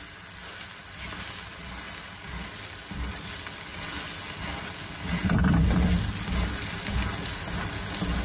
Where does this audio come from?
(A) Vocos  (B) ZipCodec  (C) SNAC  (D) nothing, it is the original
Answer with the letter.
D